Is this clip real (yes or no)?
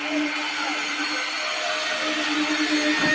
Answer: yes